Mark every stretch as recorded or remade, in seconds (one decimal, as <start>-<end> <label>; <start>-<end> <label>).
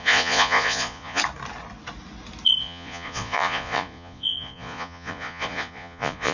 0.0-1.2 remade; 1.2-2.6 recorded; 2.6-6.3 remade